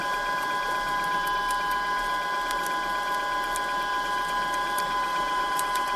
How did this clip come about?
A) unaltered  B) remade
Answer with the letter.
A